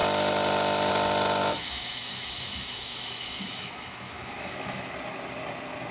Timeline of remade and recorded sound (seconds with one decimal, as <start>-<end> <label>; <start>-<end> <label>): 0.0-1.4 recorded; 1.4-4.9 remade; 4.9-5.9 recorded